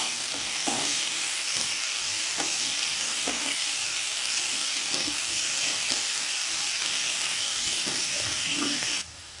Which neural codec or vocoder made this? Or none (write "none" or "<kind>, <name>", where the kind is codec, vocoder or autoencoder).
codec, DAC